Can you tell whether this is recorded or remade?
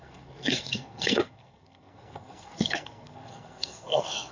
remade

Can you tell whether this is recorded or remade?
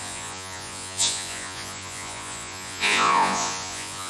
remade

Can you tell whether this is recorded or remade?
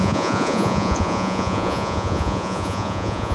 remade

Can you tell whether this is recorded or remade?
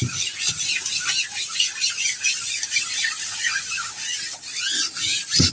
recorded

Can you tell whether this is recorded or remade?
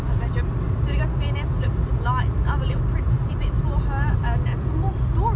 recorded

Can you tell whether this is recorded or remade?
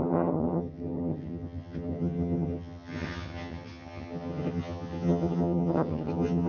remade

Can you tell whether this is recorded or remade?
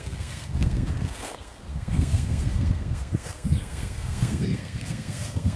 remade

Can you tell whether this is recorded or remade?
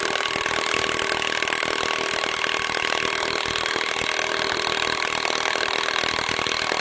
recorded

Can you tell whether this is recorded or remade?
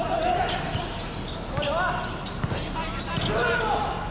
recorded